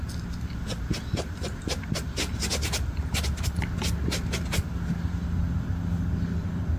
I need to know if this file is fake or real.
real